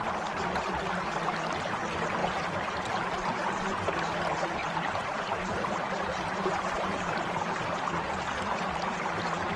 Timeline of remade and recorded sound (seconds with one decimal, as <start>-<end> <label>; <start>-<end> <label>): 0.0-2.2 recorded; 2.2-4.0 remade; 4.0-4.6 recorded; 4.6-7.5 remade; 7.5-9.6 recorded